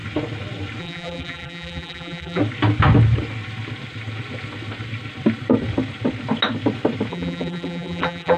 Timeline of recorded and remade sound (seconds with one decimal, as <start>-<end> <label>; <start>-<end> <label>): 0.0-0.8 recorded; 0.8-2.4 remade; 2.4-7.1 recorded; 7.1-8.4 remade